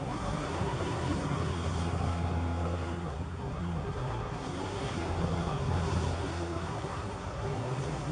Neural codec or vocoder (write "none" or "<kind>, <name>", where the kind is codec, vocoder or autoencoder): codec, SNAC